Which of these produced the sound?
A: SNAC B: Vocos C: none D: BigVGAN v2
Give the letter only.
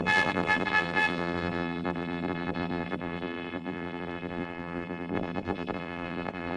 D